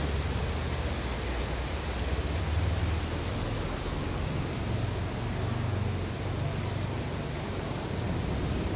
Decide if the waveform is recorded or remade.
recorded